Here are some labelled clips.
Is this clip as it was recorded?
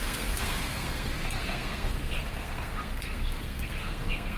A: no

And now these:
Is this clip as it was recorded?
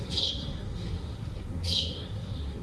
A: no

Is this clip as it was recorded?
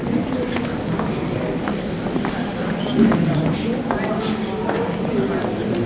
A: yes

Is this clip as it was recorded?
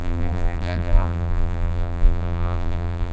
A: no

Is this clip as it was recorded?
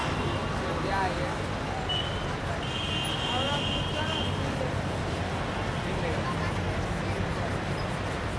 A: yes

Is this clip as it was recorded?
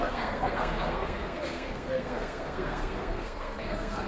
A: no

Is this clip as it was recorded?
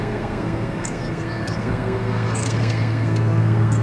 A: no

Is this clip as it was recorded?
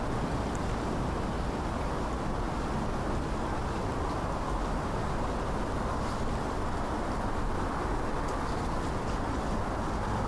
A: yes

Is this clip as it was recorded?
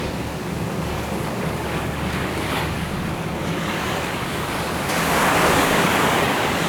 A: no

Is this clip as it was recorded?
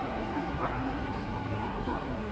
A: no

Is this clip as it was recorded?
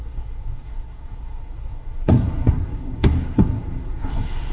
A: no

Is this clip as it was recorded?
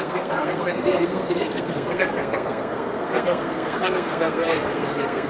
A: no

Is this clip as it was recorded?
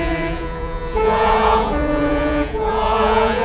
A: no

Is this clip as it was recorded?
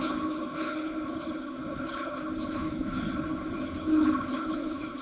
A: no